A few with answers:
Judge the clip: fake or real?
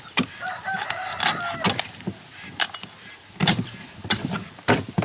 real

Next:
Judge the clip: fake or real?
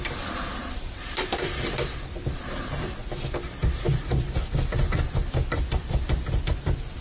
real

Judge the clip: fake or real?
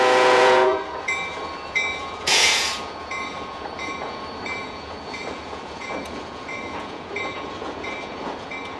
fake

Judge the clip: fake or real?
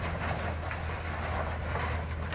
real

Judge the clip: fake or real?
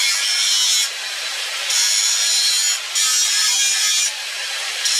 real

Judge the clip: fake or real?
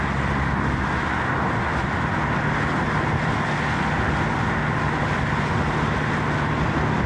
real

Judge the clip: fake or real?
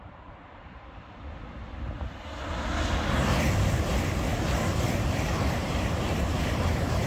real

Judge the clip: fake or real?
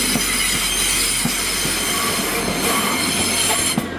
real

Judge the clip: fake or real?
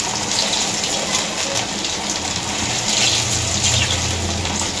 real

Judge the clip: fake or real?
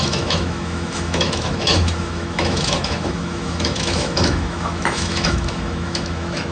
fake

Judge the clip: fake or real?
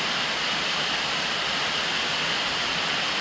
real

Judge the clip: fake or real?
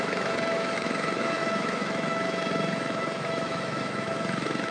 fake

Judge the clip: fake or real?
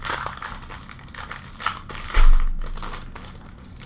real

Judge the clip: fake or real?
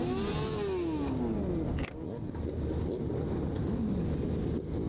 real